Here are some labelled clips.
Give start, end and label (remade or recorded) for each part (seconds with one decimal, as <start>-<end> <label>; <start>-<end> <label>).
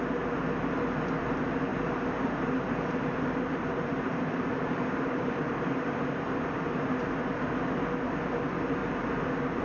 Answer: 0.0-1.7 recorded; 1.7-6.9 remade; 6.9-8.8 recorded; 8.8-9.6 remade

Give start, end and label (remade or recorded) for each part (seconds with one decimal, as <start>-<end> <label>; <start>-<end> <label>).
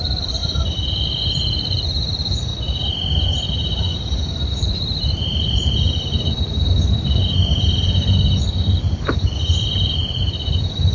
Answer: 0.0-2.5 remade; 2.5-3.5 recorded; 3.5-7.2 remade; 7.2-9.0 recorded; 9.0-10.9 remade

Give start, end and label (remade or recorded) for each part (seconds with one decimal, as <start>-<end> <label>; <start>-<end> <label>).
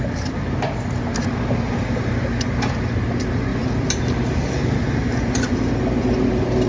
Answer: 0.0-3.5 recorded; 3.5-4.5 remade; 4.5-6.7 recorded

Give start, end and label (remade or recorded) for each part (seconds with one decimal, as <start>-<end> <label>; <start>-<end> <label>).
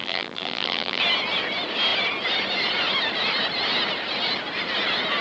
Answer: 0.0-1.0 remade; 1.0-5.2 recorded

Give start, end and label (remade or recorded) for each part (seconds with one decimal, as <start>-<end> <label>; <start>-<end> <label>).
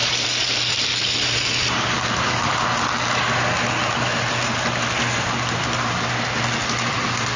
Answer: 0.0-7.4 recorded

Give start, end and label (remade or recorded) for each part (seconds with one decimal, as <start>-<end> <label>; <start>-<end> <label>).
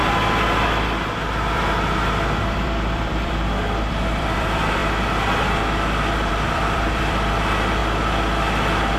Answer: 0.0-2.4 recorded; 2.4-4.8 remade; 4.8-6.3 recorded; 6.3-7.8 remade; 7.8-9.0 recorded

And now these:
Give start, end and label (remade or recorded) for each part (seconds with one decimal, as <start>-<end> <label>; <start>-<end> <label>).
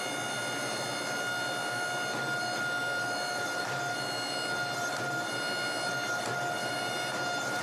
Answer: 0.0-6.6 recorded; 6.6-7.6 remade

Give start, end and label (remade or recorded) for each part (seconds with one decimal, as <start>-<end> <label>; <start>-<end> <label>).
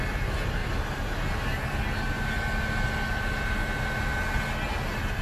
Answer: 0.0-5.2 recorded